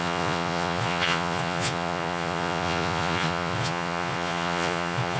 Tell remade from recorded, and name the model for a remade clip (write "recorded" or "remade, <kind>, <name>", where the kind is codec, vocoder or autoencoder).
remade, vocoder, Vocos